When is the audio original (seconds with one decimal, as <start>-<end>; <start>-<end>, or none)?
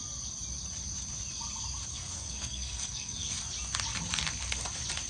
0.0-1.9; 3.4-5.1